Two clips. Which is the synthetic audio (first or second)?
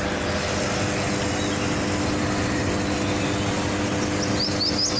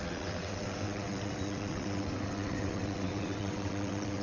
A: second